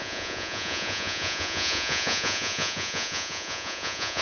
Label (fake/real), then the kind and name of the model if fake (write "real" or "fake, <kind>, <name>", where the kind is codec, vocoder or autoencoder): fake, vocoder, Vocos